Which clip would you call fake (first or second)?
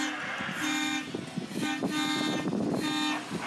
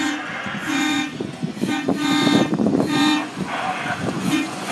second